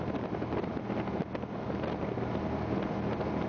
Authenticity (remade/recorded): recorded